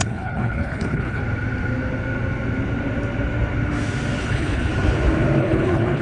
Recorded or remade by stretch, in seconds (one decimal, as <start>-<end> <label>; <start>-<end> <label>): 0.0-1.2 remade; 1.2-4.2 recorded; 4.2-4.7 remade; 4.7-5.4 recorded; 5.4-6.0 remade